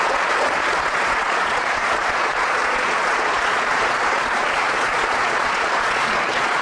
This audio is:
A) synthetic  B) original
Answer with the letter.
A